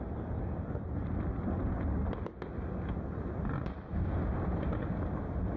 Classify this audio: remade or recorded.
recorded